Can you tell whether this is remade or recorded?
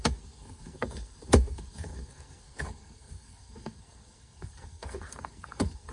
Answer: remade